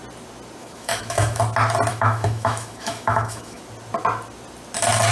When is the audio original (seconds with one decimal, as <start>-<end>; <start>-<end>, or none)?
0.0-0.6; 1.4-1.9; 3.6-5.1